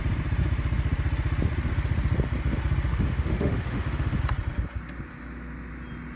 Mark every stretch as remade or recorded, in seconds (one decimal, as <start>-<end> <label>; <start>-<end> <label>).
0.0-2.9 recorded; 2.9-4.2 remade; 4.2-6.2 recorded